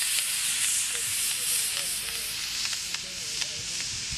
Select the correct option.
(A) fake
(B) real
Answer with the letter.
B